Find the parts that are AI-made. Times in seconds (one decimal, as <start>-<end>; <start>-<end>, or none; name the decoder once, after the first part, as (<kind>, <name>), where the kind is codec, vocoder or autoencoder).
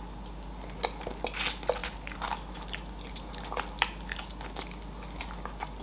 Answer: none